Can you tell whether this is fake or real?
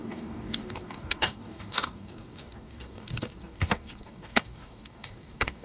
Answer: fake